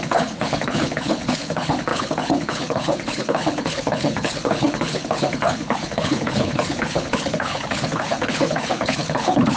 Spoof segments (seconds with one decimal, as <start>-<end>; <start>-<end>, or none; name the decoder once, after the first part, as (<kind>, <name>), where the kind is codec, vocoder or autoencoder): 0.0-9.6 (codec, HILCodec)

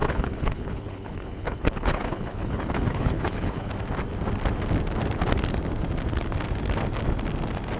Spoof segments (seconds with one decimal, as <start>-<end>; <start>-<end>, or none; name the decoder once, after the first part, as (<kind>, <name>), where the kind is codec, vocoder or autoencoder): 0.0-3.7 (codec, HILCodec)

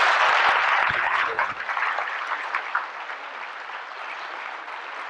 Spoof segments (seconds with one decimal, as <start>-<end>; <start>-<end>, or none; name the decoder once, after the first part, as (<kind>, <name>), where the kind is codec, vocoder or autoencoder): 0.8-1.5 (codec, HILCodec)

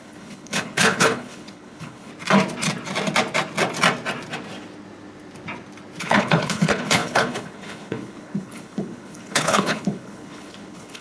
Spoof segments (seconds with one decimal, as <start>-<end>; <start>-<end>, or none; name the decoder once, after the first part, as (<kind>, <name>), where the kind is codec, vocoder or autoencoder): 0.0-2.1 (codec, HILCodec); 6.0-11.0

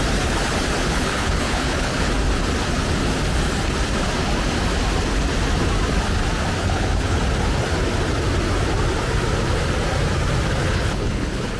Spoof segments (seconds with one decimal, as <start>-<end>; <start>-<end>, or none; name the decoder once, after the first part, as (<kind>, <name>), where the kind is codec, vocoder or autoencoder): 0.8-2.1 (codec, HILCodec); 6.6-7.2; 10.6-11.6